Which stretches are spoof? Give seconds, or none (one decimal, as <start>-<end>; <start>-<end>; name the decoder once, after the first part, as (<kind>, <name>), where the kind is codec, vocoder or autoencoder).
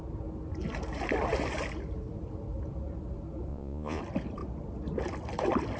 3.5-4.0 (vocoder, Vocos)